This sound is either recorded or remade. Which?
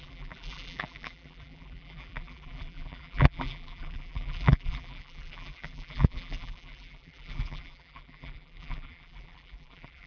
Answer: remade